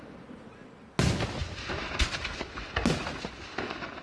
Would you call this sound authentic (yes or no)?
yes